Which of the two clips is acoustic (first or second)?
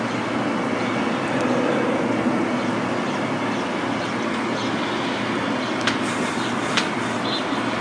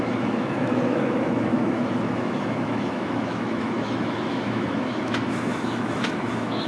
first